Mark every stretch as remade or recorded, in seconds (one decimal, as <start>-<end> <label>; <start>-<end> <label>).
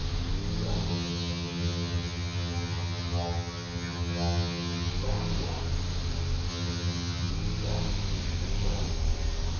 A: 0.0-0.9 recorded; 0.9-4.9 remade; 4.9-6.5 recorded; 6.5-7.3 remade; 7.3-9.6 recorded